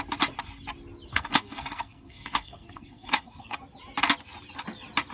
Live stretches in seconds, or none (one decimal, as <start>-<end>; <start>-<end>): 0.0-1.1; 3.6-5.1